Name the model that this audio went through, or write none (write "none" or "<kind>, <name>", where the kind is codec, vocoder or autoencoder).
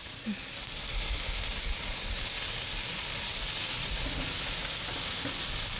none